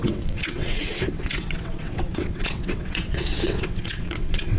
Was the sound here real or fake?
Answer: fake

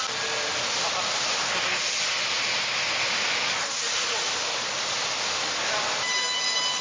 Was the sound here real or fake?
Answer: real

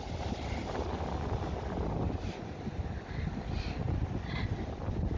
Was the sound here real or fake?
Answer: real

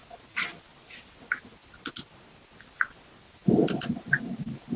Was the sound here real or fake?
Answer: real